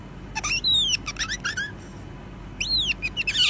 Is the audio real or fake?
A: real